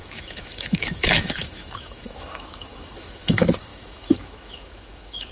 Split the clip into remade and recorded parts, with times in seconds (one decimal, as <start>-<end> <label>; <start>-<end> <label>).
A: 0.0-5.3 remade